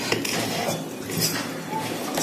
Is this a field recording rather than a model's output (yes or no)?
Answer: yes